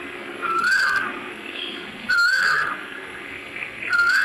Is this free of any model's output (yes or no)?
no